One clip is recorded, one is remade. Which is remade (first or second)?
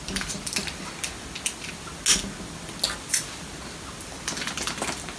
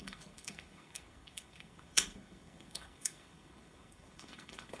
second